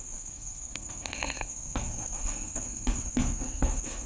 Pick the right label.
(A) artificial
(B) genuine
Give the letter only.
A